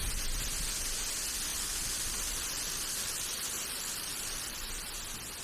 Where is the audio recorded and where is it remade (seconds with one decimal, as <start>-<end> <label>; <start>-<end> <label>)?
0.0-1.5 recorded; 1.5-4.7 remade; 4.7-5.4 recorded